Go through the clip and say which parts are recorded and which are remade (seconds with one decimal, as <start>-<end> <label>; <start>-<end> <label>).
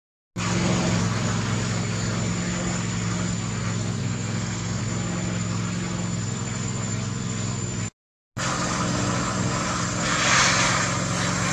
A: 0.0-4.0 recorded; 4.0-4.8 remade; 4.8-11.5 recorded